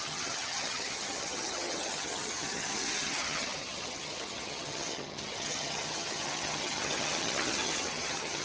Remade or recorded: remade